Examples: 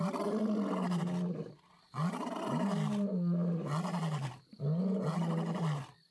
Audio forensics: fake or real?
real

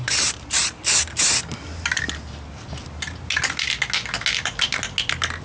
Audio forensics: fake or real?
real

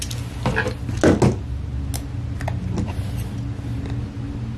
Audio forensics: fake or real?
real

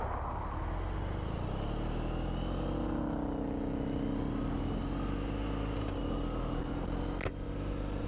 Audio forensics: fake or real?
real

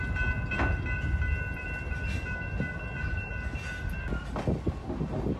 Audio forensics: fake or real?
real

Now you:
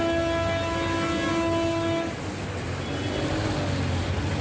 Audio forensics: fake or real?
real